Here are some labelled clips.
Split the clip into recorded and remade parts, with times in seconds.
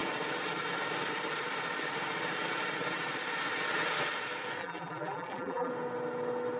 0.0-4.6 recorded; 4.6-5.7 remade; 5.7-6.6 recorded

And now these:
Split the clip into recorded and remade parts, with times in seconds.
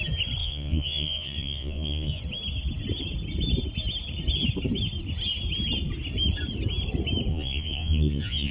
0.0-0.4 recorded; 0.4-2.2 remade; 2.2-7.3 recorded; 7.3-8.5 remade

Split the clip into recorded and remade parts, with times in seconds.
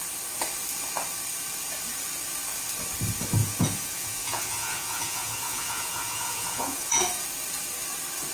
0.0-3.4 recorded; 3.4-7.0 remade; 7.0-8.3 recorded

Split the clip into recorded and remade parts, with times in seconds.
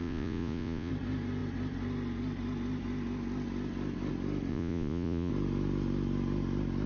0.0-0.9 remade; 0.9-4.5 recorded; 4.5-5.3 remade; 5.3-6.9 recorded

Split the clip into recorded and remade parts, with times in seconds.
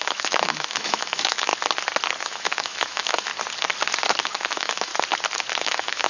0.0-1.5 remade; 1.5-2.2 recorded; 2.2-3.3 remade; 3.3-4.2 recorded; 4.2-4.9 remade; 4.9-5.6 recorded; 5.6-6.1 remade